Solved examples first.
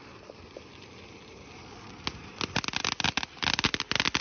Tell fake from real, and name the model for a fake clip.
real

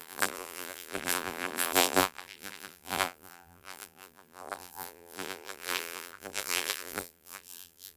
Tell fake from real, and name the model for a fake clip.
fake, vocoder, BigVGAN v2